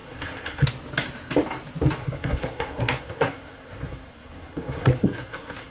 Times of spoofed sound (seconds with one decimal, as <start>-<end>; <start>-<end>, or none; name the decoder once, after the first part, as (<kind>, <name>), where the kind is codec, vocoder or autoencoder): 0.0-0.7 (codec, SNAC); 2.0-5.7